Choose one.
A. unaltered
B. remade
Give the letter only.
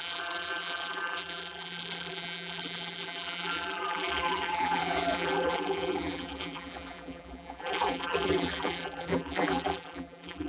B